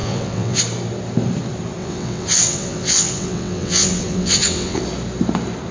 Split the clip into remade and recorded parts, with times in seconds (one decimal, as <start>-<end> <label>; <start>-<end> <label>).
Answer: 0.0-0.6 remade; 0.6-1.8 recorded; 1.8-4.8 remade; 4.8-5.7 recorded